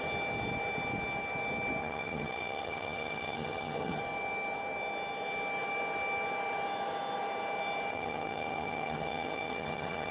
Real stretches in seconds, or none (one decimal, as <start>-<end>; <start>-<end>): 0.0-1.8; 4.0-7.9